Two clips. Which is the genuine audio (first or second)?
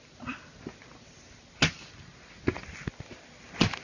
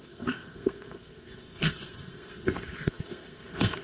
first